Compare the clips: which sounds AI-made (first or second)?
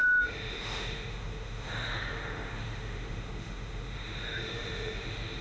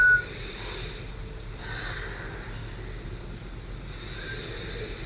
first